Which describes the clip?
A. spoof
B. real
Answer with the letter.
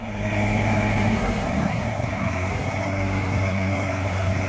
A